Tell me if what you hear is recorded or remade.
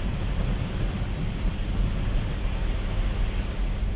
recorded